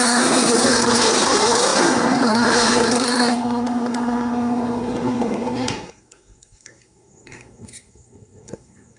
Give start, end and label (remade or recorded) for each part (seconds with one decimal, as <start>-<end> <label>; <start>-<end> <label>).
0.0-9.0 remade